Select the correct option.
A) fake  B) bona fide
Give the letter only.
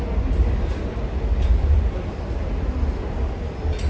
B